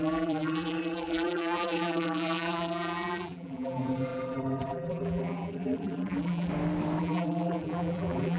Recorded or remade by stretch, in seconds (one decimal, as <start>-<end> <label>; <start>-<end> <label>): 0.0-6.5 remade; 6.5-7.0 recorded; 7.0-8.4 remade